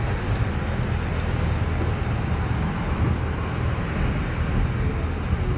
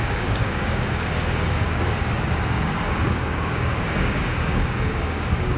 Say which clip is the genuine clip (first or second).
first